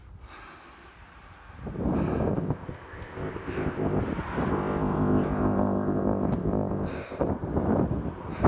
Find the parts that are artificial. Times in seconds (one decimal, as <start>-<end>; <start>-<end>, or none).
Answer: 2.3-4.0; 4.5-7.3